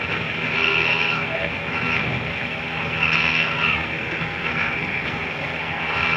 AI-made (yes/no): yes